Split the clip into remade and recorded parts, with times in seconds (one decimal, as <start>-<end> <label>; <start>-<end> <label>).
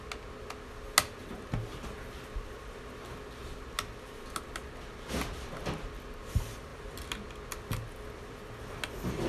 0.0-9.3 recorded